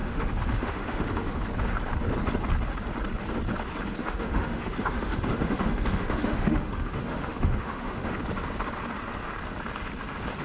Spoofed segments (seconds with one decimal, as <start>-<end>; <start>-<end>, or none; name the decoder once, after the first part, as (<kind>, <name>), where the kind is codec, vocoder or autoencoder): 0.0-1.4 (autoencoder, DAC-VAE); 4.0-8.2